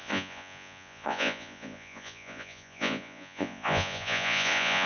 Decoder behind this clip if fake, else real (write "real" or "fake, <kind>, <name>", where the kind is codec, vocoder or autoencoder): fake, vocoder, Vocos